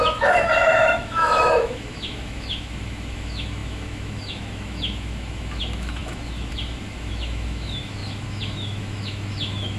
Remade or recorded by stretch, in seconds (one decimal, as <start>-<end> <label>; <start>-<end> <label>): 0.0-9.8 remade